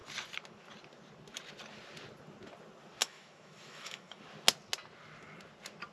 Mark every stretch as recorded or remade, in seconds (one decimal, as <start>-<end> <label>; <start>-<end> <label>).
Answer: 0.0-3.0 recorded; 3.0-4.2 remade; 4.2-5.9 recorded